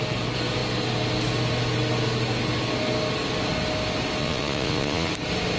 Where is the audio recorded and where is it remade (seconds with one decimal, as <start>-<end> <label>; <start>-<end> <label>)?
0.0-4.2 recorded; 4.2-5.1 remade; 5.1-5.6 recorded